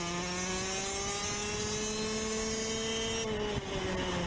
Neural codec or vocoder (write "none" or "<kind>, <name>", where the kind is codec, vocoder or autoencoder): none